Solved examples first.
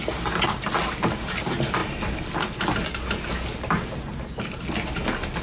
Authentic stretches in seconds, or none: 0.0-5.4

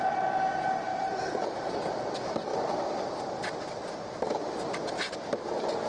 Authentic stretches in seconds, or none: 0.0-0.9; 1.7-5.9

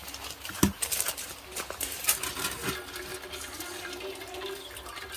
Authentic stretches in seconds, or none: 2.6-5.2

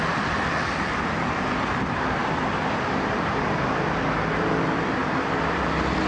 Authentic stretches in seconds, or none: 2.2-3.0

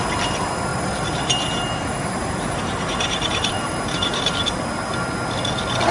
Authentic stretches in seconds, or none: 0.0-0.7; 4.2-5.9

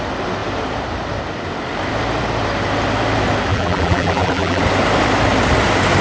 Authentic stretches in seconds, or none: 0.0-3.5; 4.6-6.0

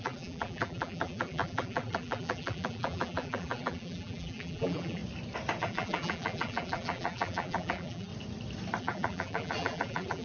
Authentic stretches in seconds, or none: 5.0-5.6; 8.1-8.8

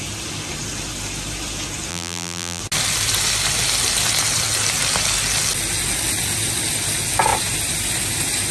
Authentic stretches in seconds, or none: 0.0-1.9; 2.6-8.5